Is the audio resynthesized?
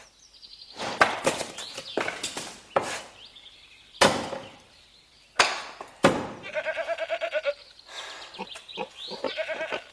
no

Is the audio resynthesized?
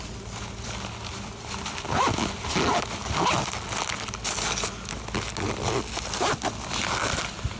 no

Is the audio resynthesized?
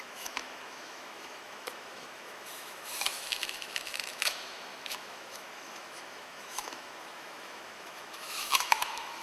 yes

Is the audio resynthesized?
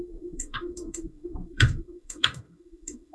yes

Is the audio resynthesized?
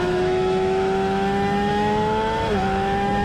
yes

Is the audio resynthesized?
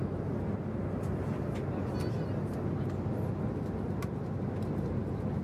no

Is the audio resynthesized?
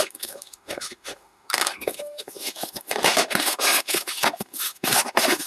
yes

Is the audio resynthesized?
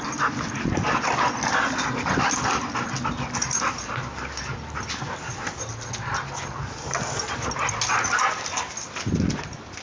no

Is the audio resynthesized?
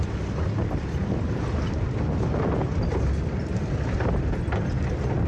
no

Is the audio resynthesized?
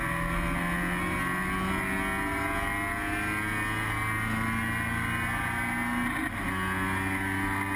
no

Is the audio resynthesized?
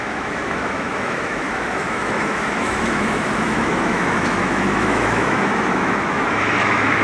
yes